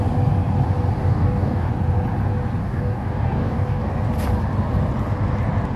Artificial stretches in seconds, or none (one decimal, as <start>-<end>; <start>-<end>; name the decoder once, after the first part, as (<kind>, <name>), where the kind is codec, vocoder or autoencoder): 1.0-1.7 (codec, DAC); 2.6-3.9